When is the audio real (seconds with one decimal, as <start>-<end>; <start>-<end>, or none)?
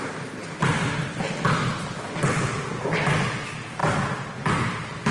0.0-5.1